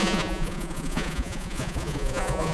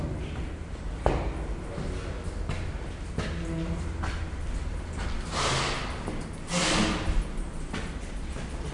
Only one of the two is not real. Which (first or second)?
first